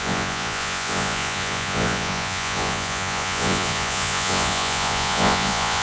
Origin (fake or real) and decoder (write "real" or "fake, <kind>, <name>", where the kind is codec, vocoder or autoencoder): fake, vocoder, Vocos